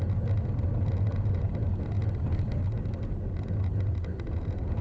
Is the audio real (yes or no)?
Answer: yes